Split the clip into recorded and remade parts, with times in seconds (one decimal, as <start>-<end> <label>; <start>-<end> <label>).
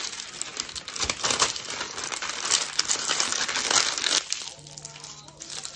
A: 0.0-5.8 recorded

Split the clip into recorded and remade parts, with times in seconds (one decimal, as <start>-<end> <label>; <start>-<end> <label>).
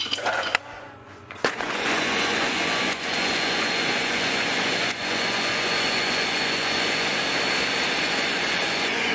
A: 0.0-7.1 remade; 7.1-8.0 recorded; 8.0-9.1 remade